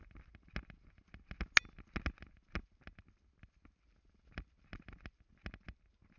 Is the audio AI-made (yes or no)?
no